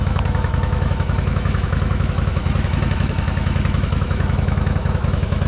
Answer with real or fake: fake